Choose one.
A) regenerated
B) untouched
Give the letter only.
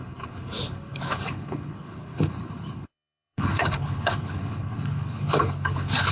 A